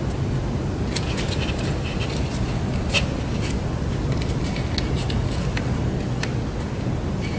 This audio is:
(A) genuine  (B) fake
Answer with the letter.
A